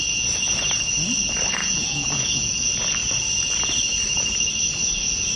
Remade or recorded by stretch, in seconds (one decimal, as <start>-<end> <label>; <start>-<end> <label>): 0.0-1.6 recorded; 1.6-2.5 remade; 2.5-5.4 recorded

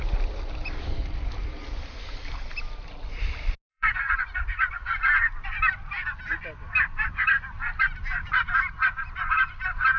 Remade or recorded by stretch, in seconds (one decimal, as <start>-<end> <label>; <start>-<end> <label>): 0.0-3.7 recorded; 3.7-5.0 remade; 5.0-10.0 recorded

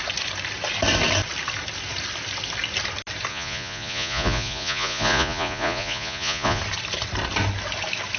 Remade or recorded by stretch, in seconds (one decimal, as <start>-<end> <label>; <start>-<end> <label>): 0.0-3.3 recorded; 3.3-6.6 remade; 6.6-8.2 recorded

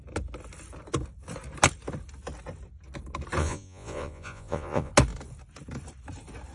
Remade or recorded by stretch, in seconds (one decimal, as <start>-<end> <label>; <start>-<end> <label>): 0.0-3.4 recorded; 3.4-4.9 remade; 4.9-6.5 recorded

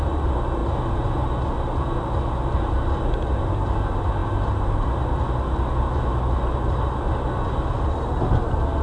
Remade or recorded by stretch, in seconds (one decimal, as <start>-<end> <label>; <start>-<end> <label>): 0.0-8.8 recorded

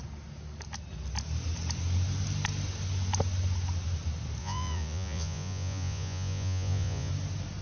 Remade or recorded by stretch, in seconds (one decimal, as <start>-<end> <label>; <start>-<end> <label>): 0.0-4.4 recorded; 4.4-7.1 remade; 7.1-7.6 recorded

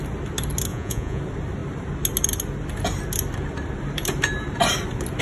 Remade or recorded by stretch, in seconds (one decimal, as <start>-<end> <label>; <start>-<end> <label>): 0.0-0.7 recorded; 0.7-1.2 remade; 1.2-5.2 recorded

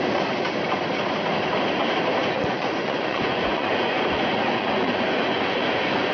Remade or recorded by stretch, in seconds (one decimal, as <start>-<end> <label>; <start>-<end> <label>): 0.0-2.2 recorded; 2.2-6.1 remade